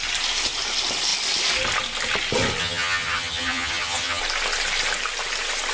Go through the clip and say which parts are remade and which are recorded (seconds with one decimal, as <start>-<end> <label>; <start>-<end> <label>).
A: 0.0-2.6 recorded; 2.6-4.2 remade; 4.2-5.7 recorded